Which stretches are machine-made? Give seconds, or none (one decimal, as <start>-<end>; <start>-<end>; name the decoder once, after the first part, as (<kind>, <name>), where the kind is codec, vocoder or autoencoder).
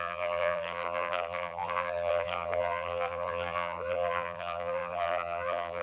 0.0-5.8 (vocoder, BigVGAN v2)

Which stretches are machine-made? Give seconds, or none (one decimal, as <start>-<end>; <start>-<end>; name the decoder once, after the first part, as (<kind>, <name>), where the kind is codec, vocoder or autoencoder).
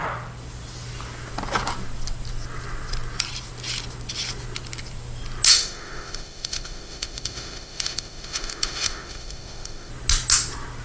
5.5-9.9 (autoencoder, DAC-VAE)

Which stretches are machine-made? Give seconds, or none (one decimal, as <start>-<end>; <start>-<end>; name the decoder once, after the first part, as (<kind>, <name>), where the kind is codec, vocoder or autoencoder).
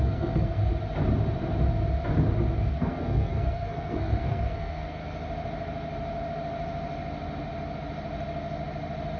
0.0-0.7 (codec, SNAC); 2.7-5.0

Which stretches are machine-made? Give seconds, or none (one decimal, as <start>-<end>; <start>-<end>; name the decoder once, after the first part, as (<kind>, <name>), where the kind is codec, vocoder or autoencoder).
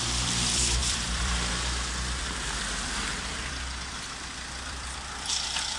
0.0-5.8 (vocoder, BigVGAN v2)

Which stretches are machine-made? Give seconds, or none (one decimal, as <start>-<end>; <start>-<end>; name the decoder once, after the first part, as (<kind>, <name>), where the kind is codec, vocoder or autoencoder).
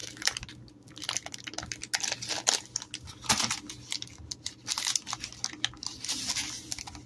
0.0-0.5 (vocoder, BigVGAN v2)